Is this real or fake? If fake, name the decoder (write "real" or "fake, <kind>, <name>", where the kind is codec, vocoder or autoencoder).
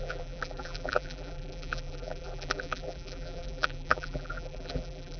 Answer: fake, vocoder, BigVGAN v2